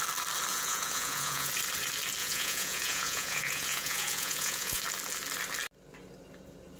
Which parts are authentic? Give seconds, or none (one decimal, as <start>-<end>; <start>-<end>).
0.0-0.5; 1.5-2.2; 4.8-6.8